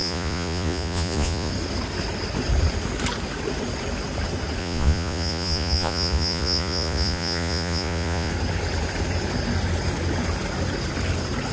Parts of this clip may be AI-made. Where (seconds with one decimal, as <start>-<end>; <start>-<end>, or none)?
0.0-1.5; 4.6-8.3